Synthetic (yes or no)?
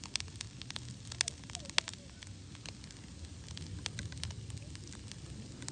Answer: no